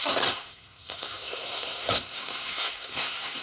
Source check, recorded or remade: remade